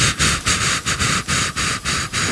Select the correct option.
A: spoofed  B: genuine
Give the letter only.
B